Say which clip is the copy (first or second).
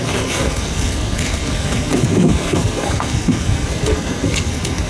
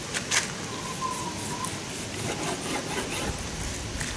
first